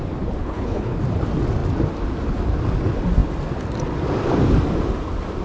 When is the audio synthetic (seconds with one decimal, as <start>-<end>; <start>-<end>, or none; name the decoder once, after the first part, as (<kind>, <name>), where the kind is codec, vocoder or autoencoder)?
0.4-1.0 (codec, HILCodec)